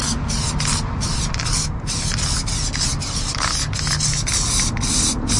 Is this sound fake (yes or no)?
no